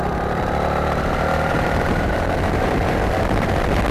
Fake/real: fake